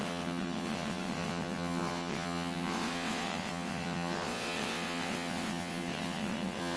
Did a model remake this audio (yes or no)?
yes